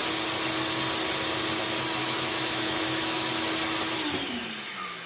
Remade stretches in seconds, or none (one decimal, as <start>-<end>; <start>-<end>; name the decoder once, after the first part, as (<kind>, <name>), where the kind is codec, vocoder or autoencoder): 2.0-3.3 (autoencoder, DAC-VAE)